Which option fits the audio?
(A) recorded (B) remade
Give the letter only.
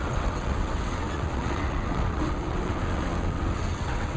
B